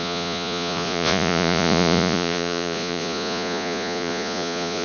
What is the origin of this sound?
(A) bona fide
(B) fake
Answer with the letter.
B